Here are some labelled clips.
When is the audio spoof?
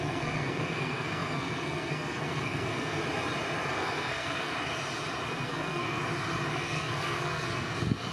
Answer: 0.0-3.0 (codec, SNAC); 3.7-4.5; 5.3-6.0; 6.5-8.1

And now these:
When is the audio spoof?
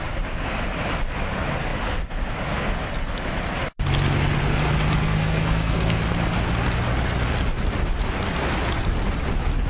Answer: 5.0-6.0 (codec, SNAC)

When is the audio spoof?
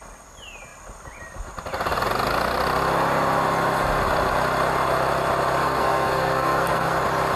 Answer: 5.6-7.0 (codec, SNAC)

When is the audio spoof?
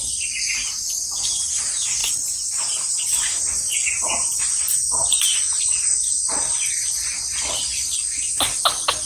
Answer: none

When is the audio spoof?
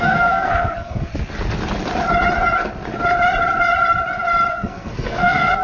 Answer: 0.0-1.1 (codec, SNAC); 4.5-5.6